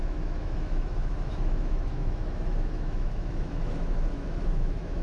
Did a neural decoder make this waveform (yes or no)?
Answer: yes